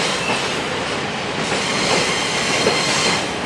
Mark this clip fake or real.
real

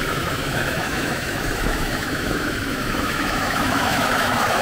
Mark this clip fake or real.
fake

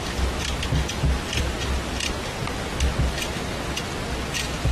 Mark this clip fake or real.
real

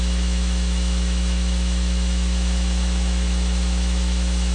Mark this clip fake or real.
fake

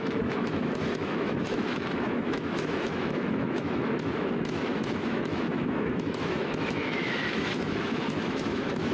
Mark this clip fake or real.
fake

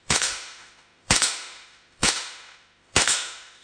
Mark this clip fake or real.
fake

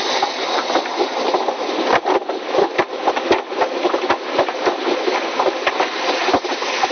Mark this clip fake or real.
real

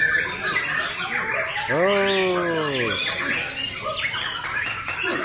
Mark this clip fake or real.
real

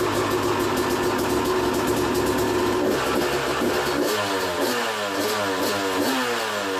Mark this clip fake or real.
real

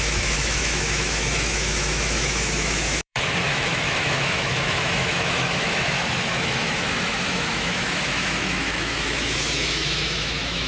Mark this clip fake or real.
fake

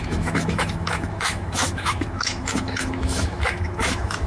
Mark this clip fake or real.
fake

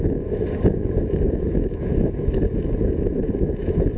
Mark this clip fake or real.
fake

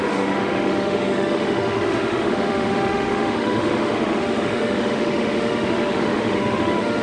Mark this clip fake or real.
fake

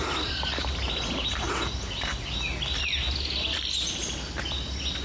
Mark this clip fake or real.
real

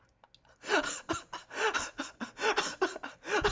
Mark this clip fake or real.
real